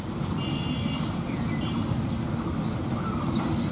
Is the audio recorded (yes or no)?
yes